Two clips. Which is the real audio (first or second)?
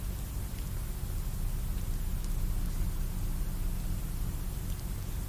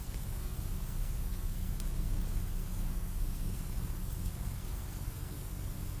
first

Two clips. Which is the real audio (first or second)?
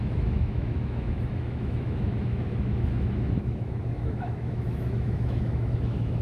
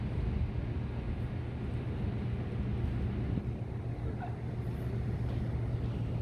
second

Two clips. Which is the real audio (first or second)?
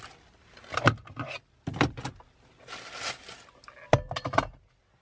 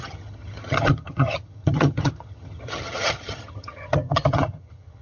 first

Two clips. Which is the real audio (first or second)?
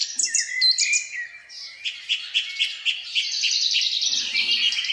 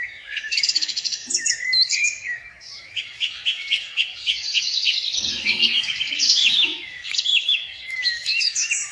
first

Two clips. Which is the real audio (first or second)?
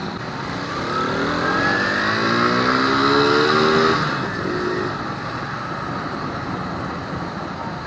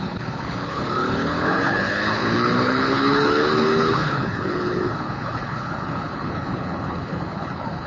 first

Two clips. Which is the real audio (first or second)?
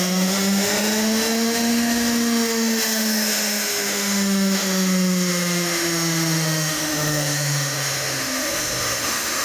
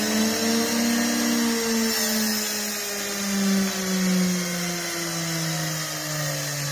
second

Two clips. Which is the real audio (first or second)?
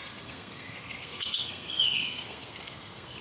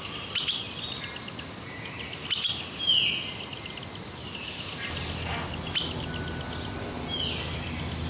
second